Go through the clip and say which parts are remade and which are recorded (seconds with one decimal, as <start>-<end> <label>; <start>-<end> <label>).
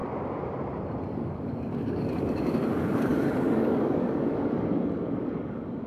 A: 0.0-1.1 recorded; 1.1-5.9 remade